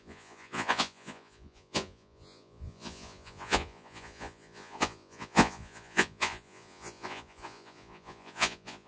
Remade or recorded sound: remade